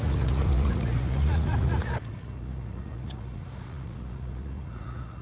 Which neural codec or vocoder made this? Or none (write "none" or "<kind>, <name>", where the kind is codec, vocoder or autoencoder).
vocoder, Vocos